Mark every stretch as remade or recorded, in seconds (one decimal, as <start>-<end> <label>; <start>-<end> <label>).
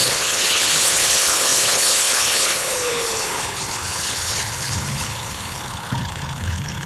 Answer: 0.0-6.9 remade